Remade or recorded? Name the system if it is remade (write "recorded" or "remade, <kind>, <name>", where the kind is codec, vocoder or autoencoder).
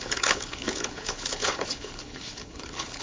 remade, codec, HILCodec